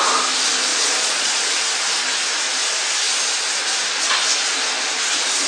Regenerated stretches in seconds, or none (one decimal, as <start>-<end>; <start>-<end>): 0.7-1.5